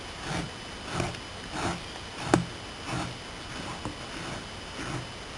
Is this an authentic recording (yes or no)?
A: yes